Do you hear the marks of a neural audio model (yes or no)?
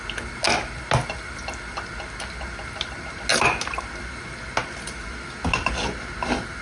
no